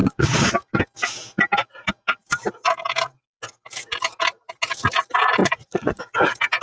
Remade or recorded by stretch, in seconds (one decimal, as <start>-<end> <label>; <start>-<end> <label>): 0.0-0.5 remade; 0.5-5.4 recorded; 5.4-6.0 remade; 6.0-6.6 recorded